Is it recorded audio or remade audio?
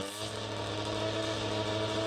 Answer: recorded